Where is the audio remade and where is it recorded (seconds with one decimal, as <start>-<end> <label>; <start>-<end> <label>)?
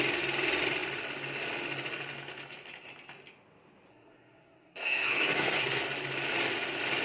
0.0-3.9 recorded; 3.9-5.8 remade; 5.8-7.0 recorded